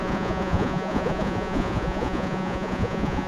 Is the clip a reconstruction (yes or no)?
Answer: yes